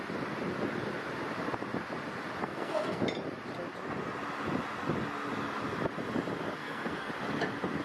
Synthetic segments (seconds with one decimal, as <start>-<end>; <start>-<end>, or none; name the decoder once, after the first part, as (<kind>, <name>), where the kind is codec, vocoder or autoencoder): 2.4-3.0 (codec, SNAC); 6.6-7.1